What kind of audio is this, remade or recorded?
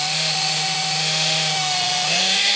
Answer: remade